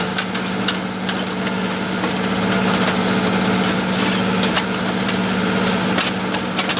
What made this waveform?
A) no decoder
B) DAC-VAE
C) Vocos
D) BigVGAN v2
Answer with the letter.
A